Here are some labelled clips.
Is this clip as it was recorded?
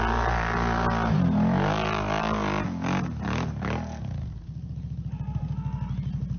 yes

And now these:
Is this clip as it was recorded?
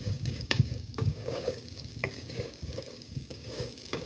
no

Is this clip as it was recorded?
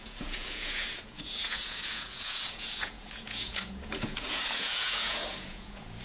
no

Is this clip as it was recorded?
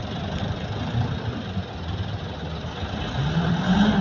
yes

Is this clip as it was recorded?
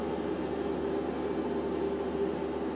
yes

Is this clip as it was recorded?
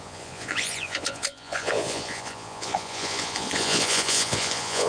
no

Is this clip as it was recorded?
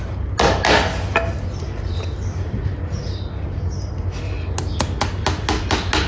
yes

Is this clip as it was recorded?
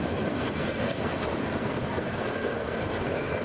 no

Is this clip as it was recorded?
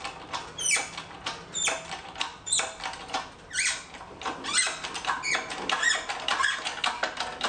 yes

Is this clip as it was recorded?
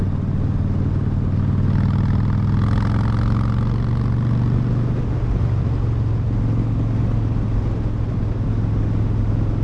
yes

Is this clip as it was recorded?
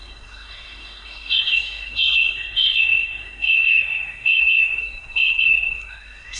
no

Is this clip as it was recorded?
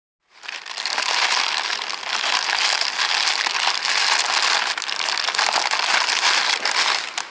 yes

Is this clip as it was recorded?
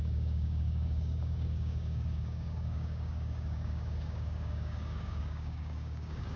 no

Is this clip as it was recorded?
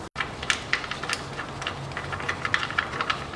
yes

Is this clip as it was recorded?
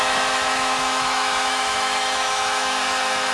no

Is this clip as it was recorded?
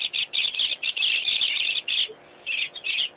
yes